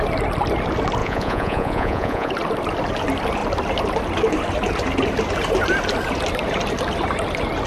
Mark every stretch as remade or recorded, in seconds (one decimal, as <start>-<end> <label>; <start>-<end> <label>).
0.0-1.0 recorded; 1.0-2.3 remade; 2.3-7.7 recorded